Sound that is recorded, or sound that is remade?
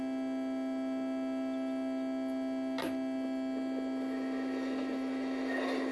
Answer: recorded